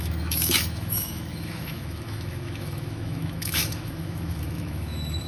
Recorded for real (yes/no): no